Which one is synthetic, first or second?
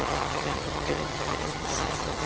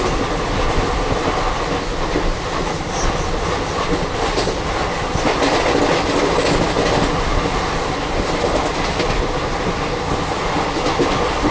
first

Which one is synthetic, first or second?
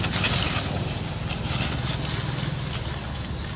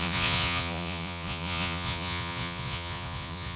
second